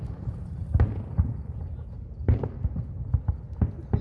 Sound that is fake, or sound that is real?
real